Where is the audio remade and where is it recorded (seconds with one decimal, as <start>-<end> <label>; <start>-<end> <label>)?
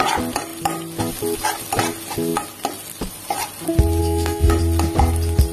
0.0-4.0 recorded; 4.0-4.5 remade; 4.5-5.5 recorded